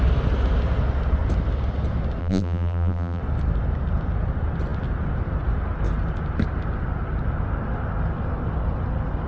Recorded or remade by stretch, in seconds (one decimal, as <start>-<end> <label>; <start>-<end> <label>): 0.0-2.2 recorded; 2.2-3.2 remade; 3.2-9.3 recorded